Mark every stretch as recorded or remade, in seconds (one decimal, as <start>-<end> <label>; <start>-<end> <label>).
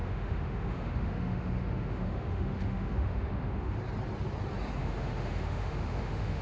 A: 0.0-3.8 remade; 3.8-4.8 recorded; 4.8-6.4 remade